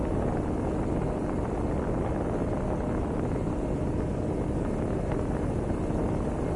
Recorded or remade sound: recorded